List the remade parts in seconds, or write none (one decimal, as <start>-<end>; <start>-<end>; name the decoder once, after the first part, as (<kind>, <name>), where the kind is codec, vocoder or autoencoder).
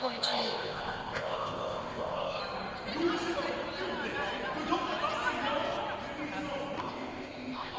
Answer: 0.0-2.4 (codec, ZipCodec); 6.8-7.8